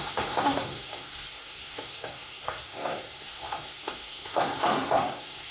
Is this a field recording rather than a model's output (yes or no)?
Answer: no